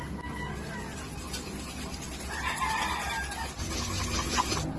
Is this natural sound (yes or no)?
yes